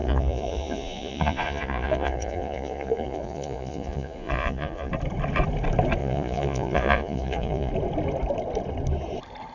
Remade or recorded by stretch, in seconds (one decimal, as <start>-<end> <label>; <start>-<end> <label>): 0.0-4.9 remade; 4.9-6.0 recorded; 6.0-7.7 remade; 7.7-9.5 recorded